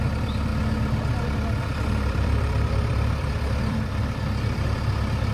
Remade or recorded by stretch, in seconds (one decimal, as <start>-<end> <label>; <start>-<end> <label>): 0.0-0.5 remade; 0.5-1.6 recorded; 1.6-5.3 remade